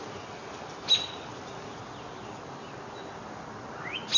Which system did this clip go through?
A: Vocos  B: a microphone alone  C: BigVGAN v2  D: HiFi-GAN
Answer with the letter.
B